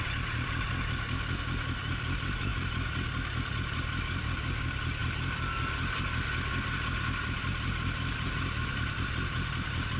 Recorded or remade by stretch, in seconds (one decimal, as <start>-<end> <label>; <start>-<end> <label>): 0.0-10.0 recorded